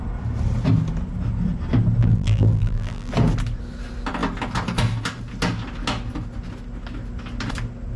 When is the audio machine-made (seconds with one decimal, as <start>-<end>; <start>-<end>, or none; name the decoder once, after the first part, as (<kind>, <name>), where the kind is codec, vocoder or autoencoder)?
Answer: 2.0-3.1 (vocoder, BigVGAN v2)